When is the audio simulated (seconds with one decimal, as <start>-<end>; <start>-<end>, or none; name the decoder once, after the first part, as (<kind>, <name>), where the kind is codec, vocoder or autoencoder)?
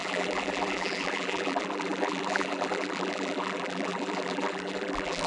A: 0.0-5.3 (vocoder, BigVGAN v2)